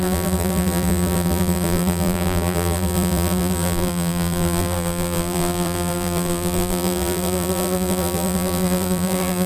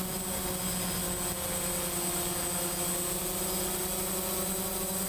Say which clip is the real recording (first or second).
second